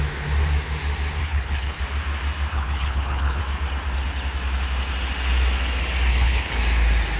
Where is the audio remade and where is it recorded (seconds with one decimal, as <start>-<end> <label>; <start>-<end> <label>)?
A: 0.0-1.2 recorded; 1.2-1.8 remade; 1.8-2.5 recorded; 2.5-3.4 remade; 3.4-6.1 recorded; 6.1-6.6 remade; 6.6-7.2 recorded